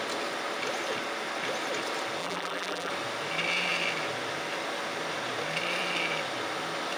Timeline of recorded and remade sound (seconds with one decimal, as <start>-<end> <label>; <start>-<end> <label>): 0.0-2.2 recorded; 2.2-2.9 remade; 2.9-7.0 recorded